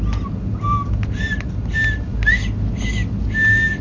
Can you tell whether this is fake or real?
real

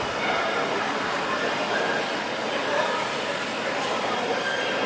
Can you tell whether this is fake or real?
real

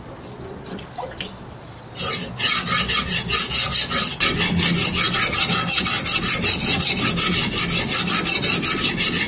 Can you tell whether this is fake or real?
real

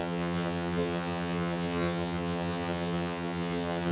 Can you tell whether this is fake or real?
fake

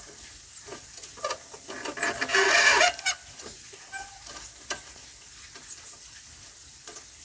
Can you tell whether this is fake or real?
real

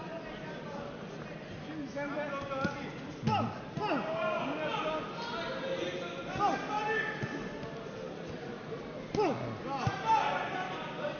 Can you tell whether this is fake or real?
real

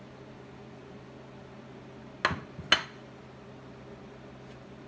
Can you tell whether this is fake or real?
real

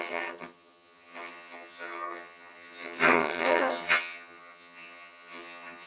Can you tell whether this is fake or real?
fake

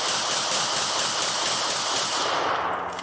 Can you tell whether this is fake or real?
real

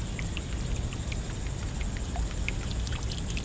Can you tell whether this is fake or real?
real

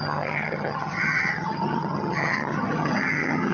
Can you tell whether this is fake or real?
fake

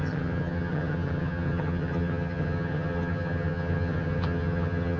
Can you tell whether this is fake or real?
fake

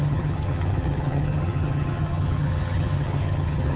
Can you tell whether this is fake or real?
fake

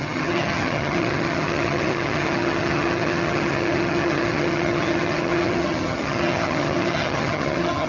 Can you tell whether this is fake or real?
fake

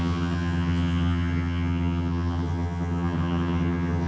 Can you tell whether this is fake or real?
fake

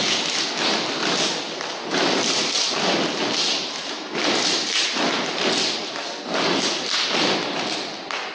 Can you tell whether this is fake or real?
real